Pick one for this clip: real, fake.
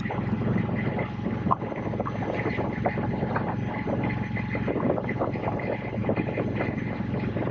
real